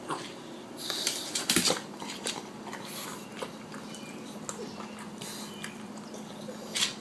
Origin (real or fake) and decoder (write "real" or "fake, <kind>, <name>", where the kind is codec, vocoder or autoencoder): real